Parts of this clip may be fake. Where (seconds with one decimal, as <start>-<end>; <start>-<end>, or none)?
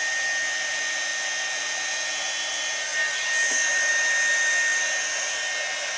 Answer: none